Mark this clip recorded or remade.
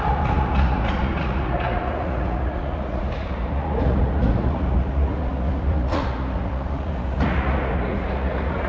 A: remade